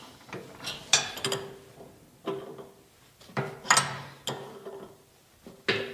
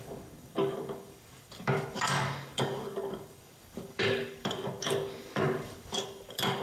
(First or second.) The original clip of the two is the first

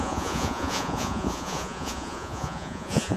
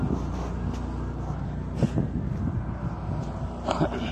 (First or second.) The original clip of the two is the second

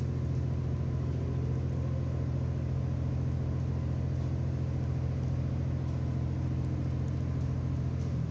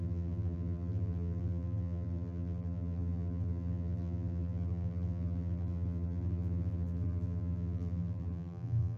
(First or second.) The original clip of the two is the first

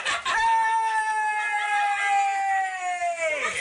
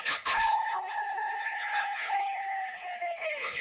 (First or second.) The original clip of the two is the first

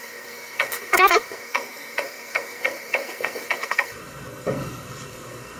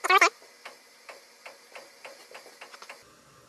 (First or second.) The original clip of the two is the second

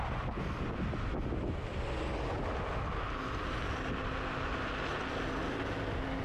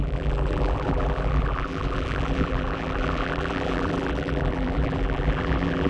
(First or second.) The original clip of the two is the first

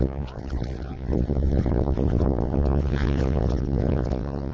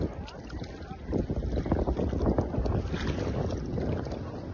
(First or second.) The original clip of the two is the second